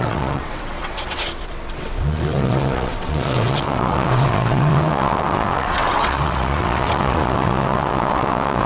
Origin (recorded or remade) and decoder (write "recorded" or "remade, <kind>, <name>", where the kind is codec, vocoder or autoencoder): remade, vocoder, WaveNeXt